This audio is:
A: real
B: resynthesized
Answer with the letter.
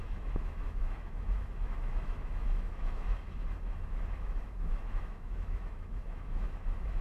B